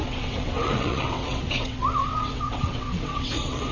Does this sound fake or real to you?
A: fake